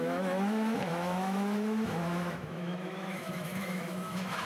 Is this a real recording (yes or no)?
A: no